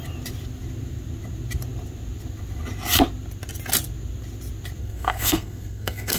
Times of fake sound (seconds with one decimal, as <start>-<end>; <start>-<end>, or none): 4.8-6.2